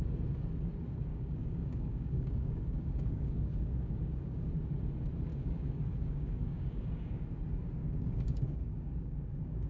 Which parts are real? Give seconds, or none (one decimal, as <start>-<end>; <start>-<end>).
0.0-1.1; 4.5-5.3; 7.3-7.8